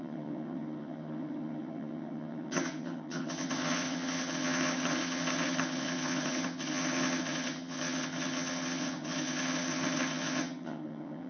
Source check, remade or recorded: remade